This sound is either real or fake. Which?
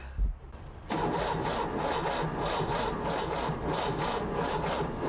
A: real